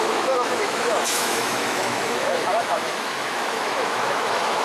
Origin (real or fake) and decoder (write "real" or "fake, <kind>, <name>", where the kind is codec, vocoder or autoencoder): fake, autoencoder, DAC-VAE